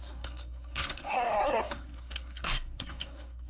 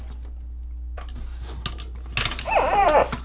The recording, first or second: second